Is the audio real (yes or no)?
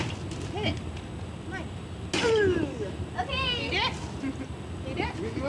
yes